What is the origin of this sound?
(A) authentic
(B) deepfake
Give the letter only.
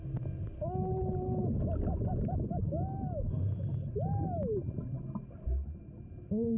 A